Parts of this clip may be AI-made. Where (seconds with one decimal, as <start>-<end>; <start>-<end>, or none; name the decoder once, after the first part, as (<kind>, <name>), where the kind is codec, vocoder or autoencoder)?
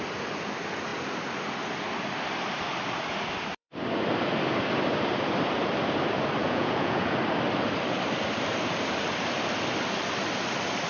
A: 6.4-7.1 (vocoder, Vocos)